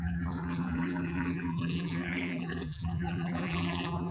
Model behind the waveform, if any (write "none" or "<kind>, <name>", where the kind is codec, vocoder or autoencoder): vocoder, BigVGAN v2